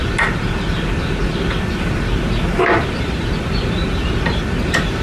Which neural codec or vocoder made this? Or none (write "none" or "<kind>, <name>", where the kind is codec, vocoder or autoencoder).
none